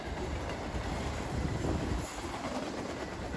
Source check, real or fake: fake